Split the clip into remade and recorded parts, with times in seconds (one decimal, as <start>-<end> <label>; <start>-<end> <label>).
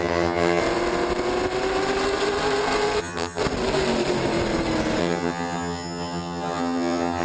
0.0-0.6 remade; 0.6-3.0 recorded; 3.0-3.4 remade; 3.4-5.0 recorded; 5.0-7.2 remade